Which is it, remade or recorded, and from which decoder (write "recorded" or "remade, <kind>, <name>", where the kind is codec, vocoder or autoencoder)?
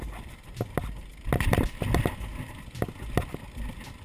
recorded